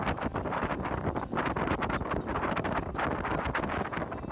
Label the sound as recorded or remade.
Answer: recorded